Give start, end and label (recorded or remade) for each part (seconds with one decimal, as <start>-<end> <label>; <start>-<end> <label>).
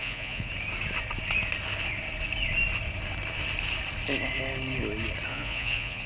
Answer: 0.0-0.5 remade; 0.5-5.3 recorded; 5.3-6.1 remade